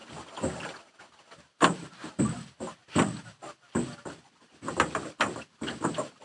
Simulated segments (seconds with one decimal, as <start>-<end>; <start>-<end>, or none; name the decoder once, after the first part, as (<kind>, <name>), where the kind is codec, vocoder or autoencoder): none